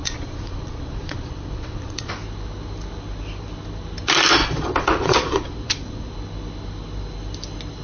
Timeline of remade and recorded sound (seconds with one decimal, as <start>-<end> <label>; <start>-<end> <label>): 0.0-2.1 remade; 2.1-4.4 recorded; 4.4-6.1 remade; 6.1-7.8 recorded